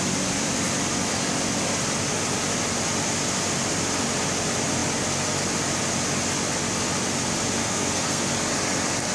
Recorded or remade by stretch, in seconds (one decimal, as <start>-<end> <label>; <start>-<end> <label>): 0.0-7.6 recorded; 7.6-8.2 remade; 8.2-9.1 recorded